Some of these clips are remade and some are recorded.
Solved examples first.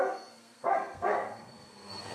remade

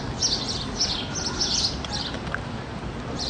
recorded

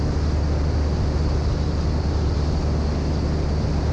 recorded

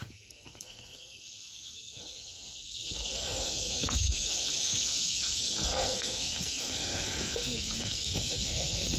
remade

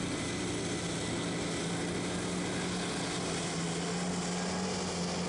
recorded